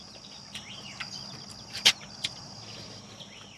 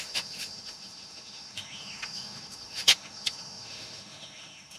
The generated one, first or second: second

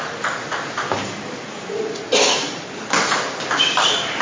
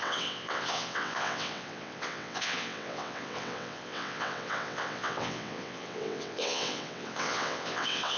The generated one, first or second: second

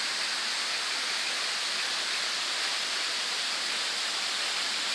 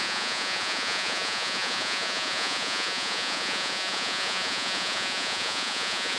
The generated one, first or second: second